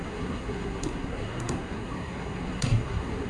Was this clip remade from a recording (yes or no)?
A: yes